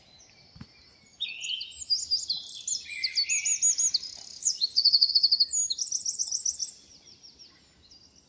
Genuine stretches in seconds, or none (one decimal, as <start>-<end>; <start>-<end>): 0.0-4.3; 5.1-8.3